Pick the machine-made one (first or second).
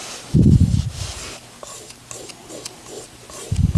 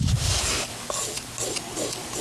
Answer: second